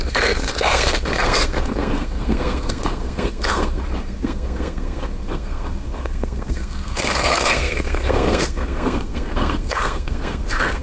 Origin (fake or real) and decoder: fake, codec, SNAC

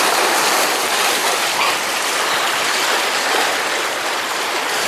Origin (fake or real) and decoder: fake, vocoder, BigVGAN v2